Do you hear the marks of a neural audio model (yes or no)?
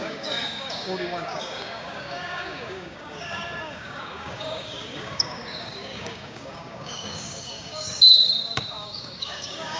yes